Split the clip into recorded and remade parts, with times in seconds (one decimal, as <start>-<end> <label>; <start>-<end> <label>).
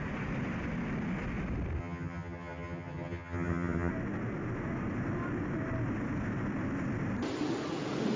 0.0-1.8 recorded; 1.8-3.9 remade; 3.9-8.2 recorded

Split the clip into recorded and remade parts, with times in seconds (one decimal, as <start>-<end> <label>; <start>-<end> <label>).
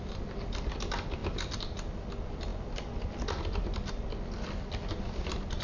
0.0-5.6 recorded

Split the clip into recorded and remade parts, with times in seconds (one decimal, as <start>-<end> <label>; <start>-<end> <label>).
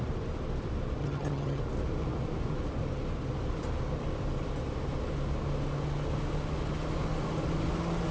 0.0-1.0 recorded; 1.0-1.6 remade; 1.6-8.1 recorded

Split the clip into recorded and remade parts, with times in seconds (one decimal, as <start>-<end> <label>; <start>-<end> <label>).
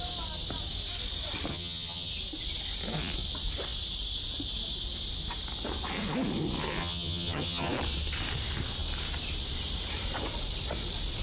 0.0-1.5 recorded; 1.5-2.1 remade; 2.1-6.8 recorded; 6.8-7.7 remade; 7.7-11.2 recorded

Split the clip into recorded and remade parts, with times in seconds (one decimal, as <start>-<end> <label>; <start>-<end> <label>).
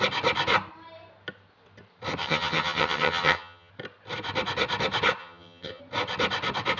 0.0-2.2 recorded; 2.2-3.7 remade; 3.7-5.2 recorded; 5.2-5.8 remade; 5.8-6.8 recorded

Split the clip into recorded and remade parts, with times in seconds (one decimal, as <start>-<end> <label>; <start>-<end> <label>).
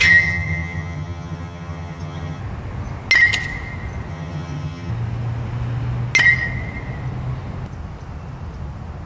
0.0-2.4 remade; 2.4-4.1 recorded; 4.1-4.9 remade; 4.9-9.1 recorded